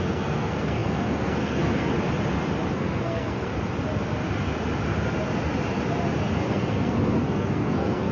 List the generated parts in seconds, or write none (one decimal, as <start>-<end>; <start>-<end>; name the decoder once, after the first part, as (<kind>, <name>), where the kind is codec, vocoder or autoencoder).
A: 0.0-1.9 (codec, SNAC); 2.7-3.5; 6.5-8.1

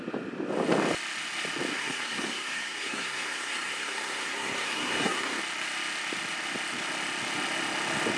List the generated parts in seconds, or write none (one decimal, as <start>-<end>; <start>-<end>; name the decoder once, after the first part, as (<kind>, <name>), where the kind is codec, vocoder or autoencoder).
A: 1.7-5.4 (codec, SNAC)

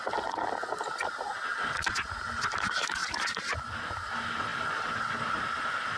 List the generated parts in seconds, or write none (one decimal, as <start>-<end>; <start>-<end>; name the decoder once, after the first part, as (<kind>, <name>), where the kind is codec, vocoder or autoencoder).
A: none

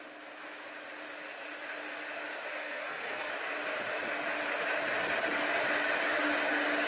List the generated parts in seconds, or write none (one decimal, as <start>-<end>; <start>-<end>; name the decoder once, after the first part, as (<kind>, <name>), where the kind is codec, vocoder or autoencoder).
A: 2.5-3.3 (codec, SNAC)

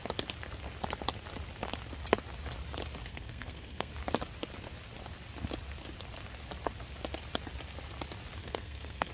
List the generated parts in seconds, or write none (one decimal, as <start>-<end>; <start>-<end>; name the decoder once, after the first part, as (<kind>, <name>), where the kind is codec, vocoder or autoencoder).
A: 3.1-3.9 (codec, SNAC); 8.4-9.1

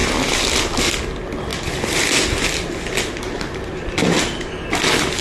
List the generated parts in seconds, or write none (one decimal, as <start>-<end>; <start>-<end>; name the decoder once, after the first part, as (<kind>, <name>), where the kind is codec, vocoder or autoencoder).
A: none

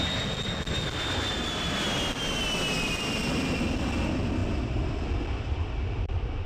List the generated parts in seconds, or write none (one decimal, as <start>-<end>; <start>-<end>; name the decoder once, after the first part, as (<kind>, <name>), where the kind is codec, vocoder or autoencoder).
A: none

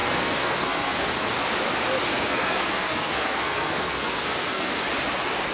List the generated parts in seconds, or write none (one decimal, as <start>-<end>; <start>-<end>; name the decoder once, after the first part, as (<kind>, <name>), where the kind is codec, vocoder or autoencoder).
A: 0.0-1.1 (codec, SNAC); 2.1-4.7